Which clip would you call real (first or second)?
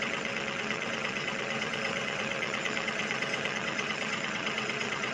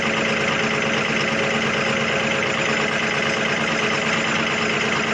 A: second